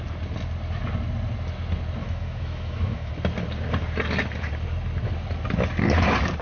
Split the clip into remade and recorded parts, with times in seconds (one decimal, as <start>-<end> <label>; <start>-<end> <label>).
0.0-2.0 recorded; 2.0-3.1 remade; 3.1-6.4 recorded